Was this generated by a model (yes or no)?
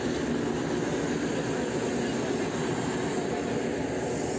no